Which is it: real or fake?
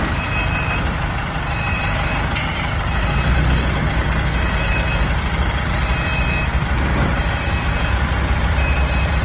fake